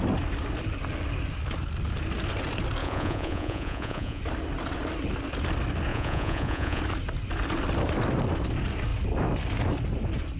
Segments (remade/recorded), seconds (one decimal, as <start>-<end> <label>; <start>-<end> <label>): 0.0-2.8 recorded; 2.8-4.2 remade; 4.2-5.9 recorded; 5.9-6.8 remade; 6.8-10.4 recorded